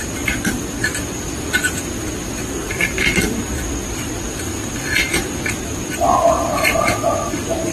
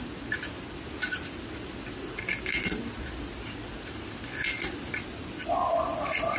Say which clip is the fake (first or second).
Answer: first